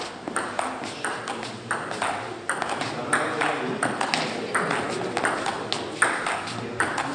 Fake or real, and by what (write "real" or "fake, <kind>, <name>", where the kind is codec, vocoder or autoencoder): real